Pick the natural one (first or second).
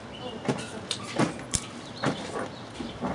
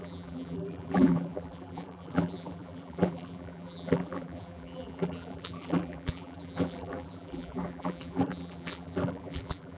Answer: first